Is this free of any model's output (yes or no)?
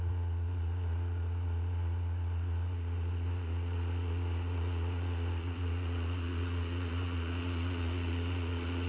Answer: no